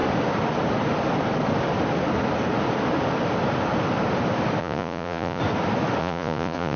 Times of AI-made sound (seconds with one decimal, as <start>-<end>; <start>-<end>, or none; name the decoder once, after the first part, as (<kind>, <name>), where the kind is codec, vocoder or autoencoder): 4.6-5.4 (vocoder, Vocos); 6.0-6.8